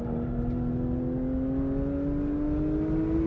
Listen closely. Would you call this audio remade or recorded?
recorded